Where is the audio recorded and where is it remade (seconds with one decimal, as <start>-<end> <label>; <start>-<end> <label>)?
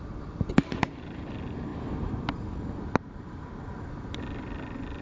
0.0-5.0 recorded